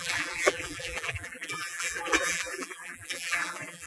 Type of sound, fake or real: fake